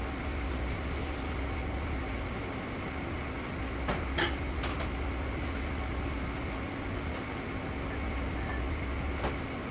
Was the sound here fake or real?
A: real